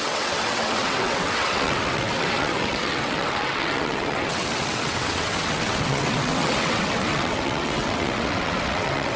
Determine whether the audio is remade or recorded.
remade